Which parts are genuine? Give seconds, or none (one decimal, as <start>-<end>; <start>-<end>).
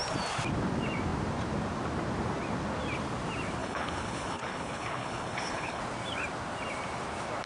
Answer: 0.0-3.6; 5.8-7.5